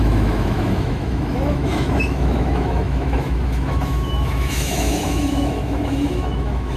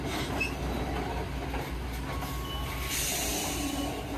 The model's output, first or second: first